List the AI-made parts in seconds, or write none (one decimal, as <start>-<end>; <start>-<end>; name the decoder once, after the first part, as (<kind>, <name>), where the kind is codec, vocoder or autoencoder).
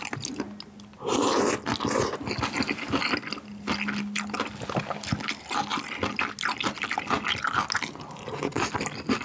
none